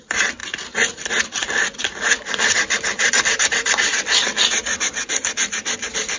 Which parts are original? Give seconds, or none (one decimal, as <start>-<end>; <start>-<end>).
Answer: 0.4-1.1

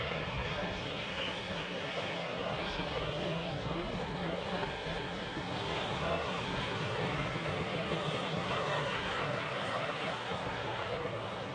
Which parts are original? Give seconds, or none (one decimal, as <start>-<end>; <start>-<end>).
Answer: none

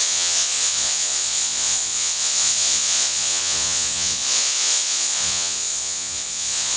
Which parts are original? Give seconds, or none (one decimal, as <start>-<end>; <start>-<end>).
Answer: none

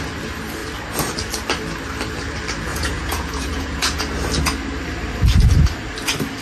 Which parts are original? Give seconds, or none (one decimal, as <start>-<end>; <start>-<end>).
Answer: 0.0-2.7; 4.0-6.4